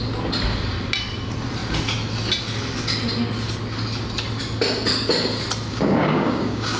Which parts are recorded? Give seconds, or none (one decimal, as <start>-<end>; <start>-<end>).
0.0-5.7